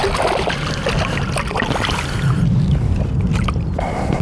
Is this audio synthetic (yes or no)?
no